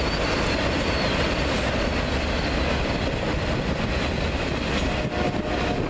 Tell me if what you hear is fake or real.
real